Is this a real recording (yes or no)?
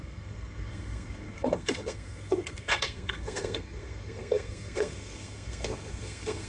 no